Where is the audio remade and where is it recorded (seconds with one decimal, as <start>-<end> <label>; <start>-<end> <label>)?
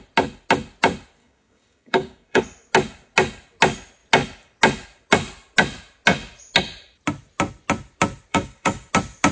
0.0-1.2 recorded; 1.2-2.4 remade; 2.4-8.3 recorded; 8.3-8.9 remade; 8.9-9.3 recorded